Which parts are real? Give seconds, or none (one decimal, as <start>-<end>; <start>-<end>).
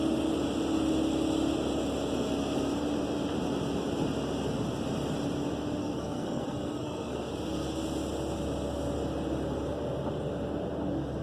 0.0-5.8; 7.3-11.2